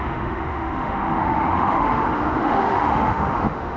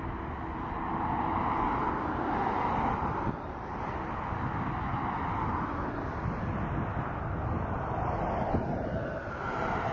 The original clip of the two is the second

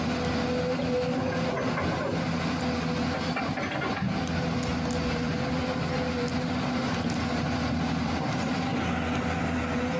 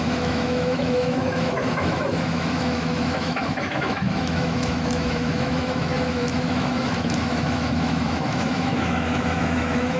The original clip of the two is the first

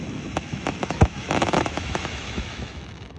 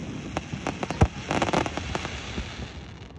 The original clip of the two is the second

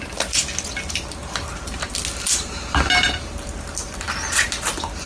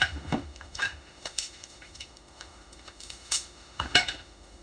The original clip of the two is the first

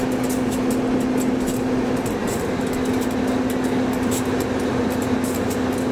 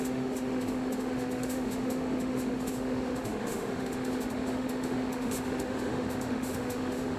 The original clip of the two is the first